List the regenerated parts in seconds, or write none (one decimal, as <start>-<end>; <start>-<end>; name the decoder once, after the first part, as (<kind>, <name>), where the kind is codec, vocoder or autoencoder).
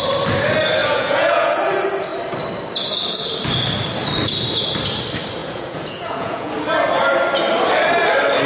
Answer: 0.8-1.6 (vocoder, Vocos); 5.4-6.5